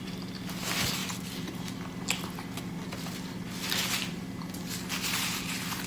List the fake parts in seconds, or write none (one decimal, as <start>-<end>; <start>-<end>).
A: none